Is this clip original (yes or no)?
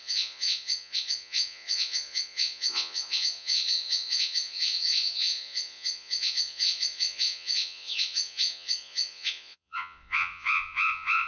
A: no